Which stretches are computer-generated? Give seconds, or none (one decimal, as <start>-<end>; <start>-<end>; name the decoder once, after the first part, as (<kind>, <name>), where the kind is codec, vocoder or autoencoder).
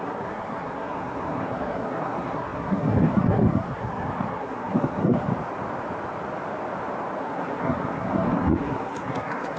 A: 0.0-5.3 (codec, SNAC); 7.2-9.6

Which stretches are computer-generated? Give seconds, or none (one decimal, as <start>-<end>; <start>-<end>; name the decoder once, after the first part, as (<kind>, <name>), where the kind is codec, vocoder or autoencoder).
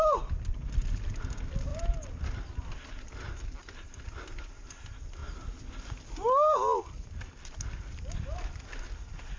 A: none